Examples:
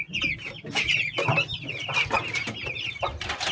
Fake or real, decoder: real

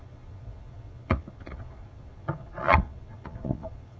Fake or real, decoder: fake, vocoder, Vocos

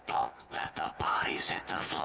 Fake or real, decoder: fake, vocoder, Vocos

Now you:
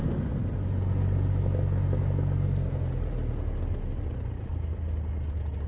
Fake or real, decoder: real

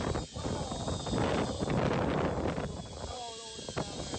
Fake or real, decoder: real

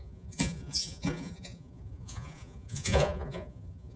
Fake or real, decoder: fake, vocoder, Vocos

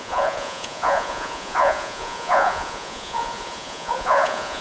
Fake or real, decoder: fake, vocoder, Vocos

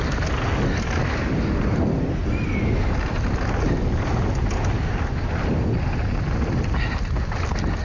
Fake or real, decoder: real